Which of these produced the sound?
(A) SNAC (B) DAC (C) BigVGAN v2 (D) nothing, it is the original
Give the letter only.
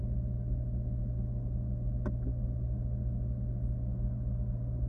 D